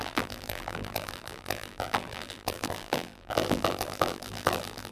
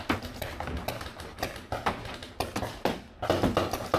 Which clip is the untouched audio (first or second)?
second